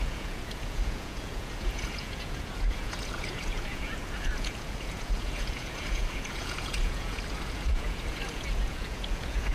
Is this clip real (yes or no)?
no